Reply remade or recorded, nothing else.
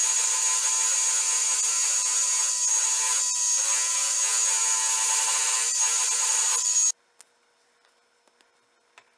recorded